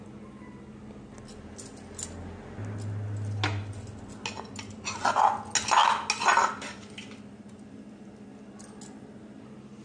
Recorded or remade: recorded